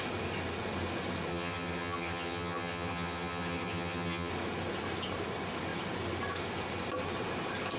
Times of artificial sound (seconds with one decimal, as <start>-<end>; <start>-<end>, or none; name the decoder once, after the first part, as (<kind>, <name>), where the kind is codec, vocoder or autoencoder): 1.3-4.3 (vocoder, HiFi-GAN)